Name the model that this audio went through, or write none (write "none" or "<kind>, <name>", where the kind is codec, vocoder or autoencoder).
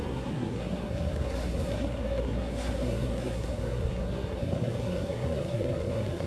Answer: codec, SNAC